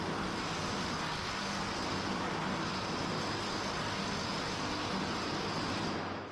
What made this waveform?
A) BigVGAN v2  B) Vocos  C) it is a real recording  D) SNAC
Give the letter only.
C